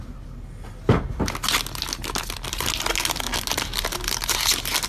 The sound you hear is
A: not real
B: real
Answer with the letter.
B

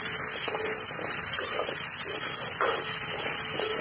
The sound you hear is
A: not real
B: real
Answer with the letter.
B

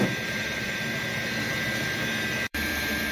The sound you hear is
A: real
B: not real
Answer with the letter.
B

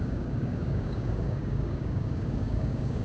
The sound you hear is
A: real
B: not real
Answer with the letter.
B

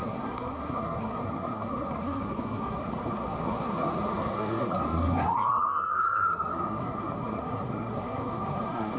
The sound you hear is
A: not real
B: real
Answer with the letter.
A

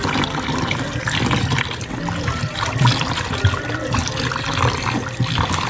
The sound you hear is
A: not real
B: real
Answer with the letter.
B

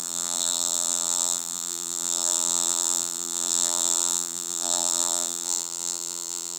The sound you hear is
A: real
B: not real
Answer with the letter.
B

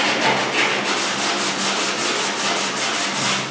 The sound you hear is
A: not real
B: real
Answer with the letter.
B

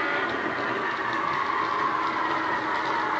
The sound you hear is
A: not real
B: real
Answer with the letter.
B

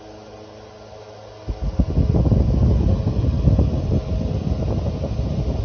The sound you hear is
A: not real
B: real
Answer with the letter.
B